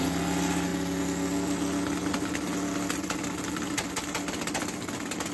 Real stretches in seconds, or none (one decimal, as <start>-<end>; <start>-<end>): 0.0-5.3